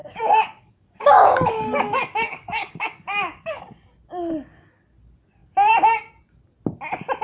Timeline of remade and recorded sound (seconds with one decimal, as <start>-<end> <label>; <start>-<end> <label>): 0.0-3.6 remade; 3.6-7.2 recorded